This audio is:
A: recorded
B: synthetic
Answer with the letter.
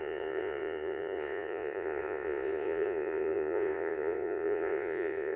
B